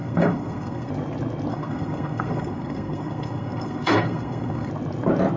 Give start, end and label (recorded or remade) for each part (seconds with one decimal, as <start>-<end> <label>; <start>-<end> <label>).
0.0-0.9 remade; 0.9-1.5 recorded; 1.5-4.7 remade; 4.7-5.4 recorded